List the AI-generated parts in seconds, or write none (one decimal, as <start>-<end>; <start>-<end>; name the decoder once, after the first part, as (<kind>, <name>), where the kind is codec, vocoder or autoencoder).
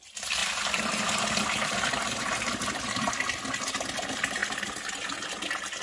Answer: 0.4-3.1 (vocoder, BigVGAN v2)